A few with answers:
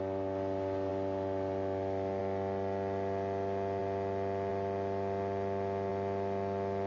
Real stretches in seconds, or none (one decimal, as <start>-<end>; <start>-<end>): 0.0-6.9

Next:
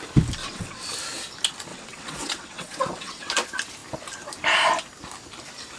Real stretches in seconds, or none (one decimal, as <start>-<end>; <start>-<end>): 0.0-0.4; 0.9-1.7; 3.3-5.8

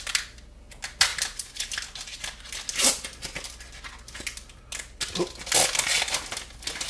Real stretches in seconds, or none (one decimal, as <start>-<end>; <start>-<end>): 0.0-6.9

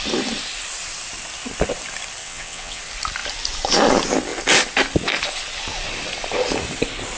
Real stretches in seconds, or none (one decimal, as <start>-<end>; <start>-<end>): 0.0-2.2; 2.8-7.2